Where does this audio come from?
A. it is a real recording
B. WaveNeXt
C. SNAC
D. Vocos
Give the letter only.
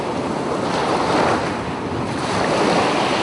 A